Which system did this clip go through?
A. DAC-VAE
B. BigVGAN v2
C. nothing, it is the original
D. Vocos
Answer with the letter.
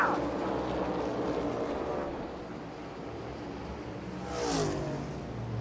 C